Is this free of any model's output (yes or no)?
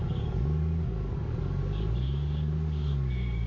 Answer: no